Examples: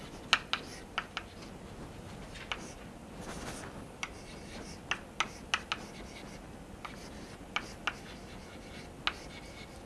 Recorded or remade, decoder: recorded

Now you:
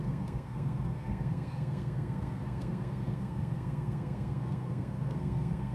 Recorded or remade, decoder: remade, codec, SNAC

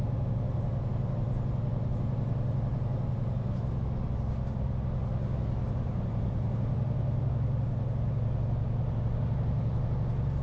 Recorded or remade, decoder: recorded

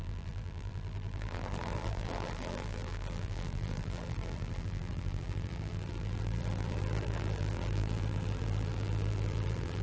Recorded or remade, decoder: remade, vocoder, BigVGAN v2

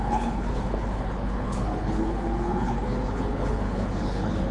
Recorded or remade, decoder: remade, codec, HILCodec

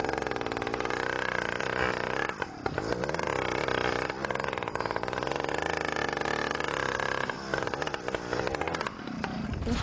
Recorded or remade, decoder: recorded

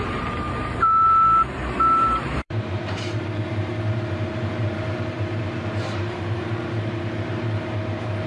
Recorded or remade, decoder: remade, vocoder, BigVGAN v2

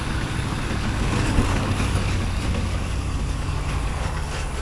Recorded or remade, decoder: remade, codec, DAC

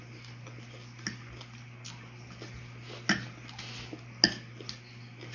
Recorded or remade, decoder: recorded